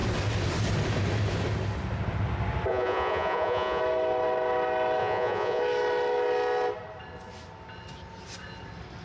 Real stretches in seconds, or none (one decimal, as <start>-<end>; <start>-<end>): 0.0-2.7; 3.8-5.0; 5.6-9.0